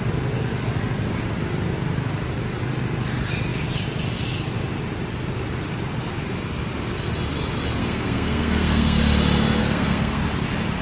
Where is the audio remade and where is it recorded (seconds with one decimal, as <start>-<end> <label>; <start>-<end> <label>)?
0.0-7.8 recorded; 7.8-9.0 remade; 9.0-9.6 recorded; 9.6-10.2 remade; 10.2-10.8 recorded